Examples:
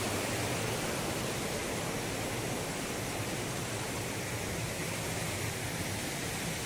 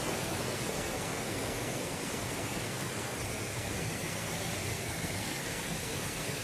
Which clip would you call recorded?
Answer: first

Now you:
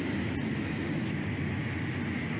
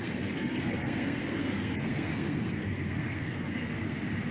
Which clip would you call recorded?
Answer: first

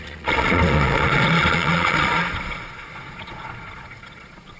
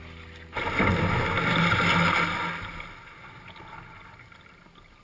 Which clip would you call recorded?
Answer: second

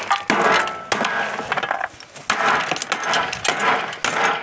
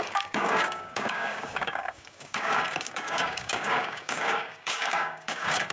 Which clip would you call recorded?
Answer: first